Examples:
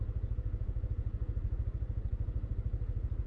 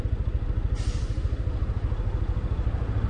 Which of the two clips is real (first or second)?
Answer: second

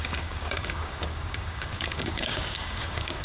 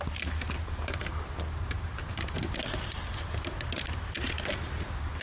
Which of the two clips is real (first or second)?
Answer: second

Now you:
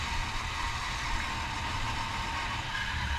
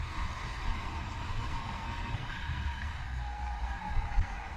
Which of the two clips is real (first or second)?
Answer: first